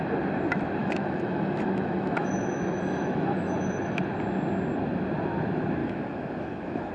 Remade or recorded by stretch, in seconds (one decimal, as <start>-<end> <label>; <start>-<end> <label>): 0.0-0.8 recorded; 0.8-4.0 remade; 4.0-5.8 recorded; 5.8-6.9 remade